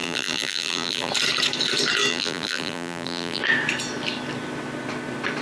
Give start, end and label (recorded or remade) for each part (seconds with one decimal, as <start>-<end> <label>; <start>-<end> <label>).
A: 0.0-1.1 remade; 1.1-2.1 recorded; 2.1-3.4 remade; 3.4-5.4 recorded